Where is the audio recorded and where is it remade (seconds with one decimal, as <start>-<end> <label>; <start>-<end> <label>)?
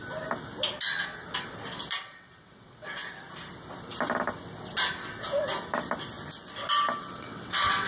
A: 0.0-2.0 recorded; 2.0-3.0 remade; 3.0-7.0 recorded; 7.0-7.9 remade